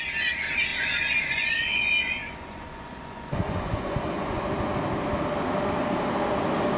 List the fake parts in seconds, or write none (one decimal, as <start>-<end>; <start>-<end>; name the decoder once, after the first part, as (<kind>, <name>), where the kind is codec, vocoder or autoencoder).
0.7-4.4 (vocoder, Vocos)